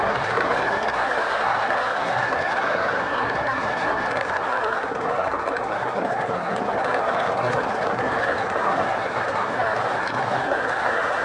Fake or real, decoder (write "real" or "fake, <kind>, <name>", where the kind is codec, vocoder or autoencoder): fake, codec, SNAC